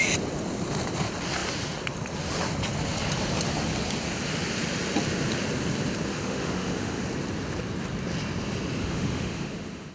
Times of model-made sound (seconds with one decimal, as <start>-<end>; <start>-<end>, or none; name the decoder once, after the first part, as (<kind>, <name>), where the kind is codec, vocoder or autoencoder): 6.1-7.0 (autoencoder, DAC-VAE); 8.8-9.9